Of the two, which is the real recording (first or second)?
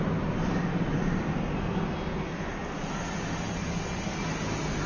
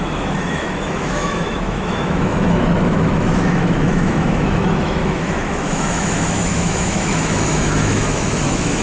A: first